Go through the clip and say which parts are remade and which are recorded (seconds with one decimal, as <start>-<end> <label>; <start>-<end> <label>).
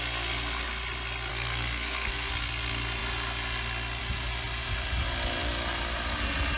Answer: 0.0-1.3 recorded; 1.3-2.3 remade; 2.3-6.6 recorded